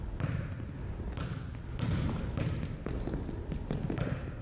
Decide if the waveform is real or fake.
real